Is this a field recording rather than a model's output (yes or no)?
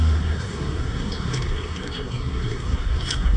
no